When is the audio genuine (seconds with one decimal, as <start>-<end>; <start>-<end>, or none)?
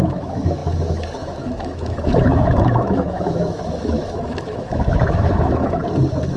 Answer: 5.8-6.4